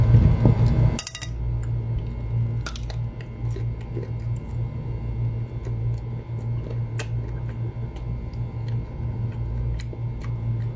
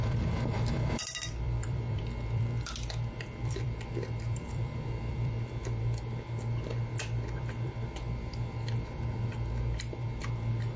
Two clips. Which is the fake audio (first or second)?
second